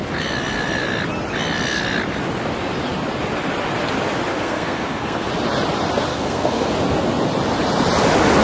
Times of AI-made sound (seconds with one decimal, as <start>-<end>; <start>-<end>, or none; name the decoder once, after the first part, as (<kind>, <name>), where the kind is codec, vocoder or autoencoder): 4.3-5.3 (codec, SNAC); 6.1-6.7